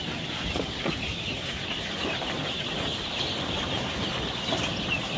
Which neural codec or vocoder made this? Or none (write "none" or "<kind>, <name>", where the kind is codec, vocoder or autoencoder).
vocoder, BigVGAN v2